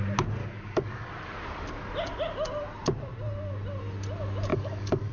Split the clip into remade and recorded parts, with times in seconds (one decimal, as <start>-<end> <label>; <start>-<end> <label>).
0.0-0.4 recorded; 0.4-1.1 remade; 1.1-4.5 recorded; 4.5-5.1 remade